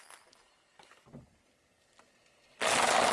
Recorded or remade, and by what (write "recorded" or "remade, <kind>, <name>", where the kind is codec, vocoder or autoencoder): recorded